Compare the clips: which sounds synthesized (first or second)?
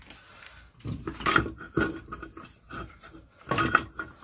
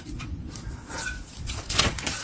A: second